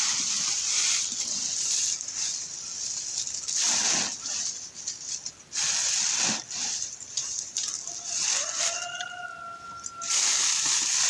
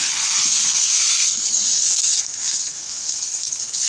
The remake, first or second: second